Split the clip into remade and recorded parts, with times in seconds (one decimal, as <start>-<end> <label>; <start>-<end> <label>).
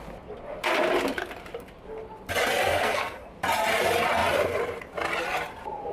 0.0-2.7 recorded; 2.7-3.3 remade; 3.3-5.9 recorded